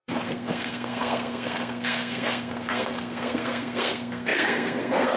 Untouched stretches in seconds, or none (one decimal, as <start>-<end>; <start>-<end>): none